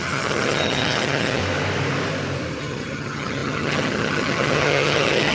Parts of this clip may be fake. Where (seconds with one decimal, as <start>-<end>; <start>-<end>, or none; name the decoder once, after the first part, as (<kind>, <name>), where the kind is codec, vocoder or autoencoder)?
0.0-1.4 (vocoder, HiFi-GAN); 2.6-5.3